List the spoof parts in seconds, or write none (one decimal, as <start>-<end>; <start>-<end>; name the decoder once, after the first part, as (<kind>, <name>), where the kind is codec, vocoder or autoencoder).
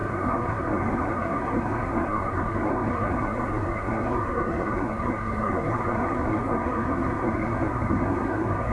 0.0-8.7 (codec, SNAC)